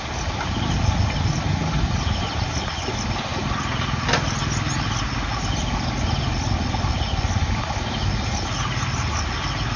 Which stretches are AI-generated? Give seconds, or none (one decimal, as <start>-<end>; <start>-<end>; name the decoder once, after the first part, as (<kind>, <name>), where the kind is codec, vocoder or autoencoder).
none